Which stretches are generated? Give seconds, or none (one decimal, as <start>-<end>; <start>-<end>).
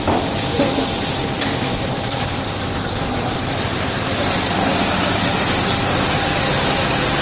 none